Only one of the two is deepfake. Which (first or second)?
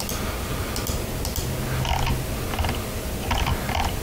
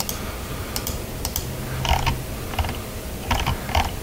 second